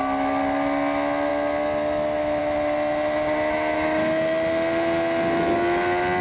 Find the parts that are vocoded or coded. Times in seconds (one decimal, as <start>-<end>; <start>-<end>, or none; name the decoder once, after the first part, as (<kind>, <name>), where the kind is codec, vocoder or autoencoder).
none